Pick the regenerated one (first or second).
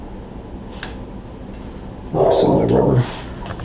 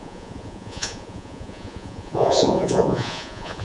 second